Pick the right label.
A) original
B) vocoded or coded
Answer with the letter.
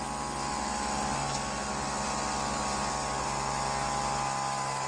A